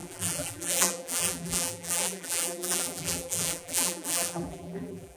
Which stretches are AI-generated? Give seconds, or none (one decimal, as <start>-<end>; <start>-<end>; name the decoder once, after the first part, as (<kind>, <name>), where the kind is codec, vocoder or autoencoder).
0.0-5.2 (vocoder, BigVGAN v2)